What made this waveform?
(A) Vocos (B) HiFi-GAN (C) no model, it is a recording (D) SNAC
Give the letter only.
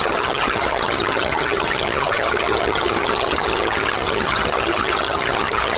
B